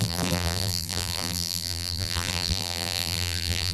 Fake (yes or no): yes